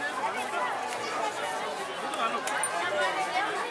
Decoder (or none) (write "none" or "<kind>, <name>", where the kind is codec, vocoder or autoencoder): none